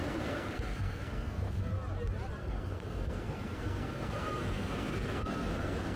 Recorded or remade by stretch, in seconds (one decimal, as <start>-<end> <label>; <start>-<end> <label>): 0.0-1.7 remade; 1.7-2.4 recorded; 2.4-6.0 remade